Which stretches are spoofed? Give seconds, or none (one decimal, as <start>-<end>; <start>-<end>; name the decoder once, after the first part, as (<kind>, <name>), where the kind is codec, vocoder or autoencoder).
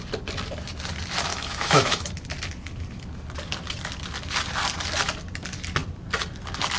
1.3-2.1 (autoencoder, DAC-VAE)